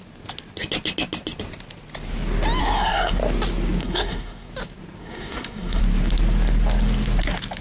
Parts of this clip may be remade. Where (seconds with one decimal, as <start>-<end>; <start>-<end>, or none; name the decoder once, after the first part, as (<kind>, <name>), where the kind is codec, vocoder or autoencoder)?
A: 2.6-3.2 (codec, SNAC); 3.8-4.5; 5.0-5.8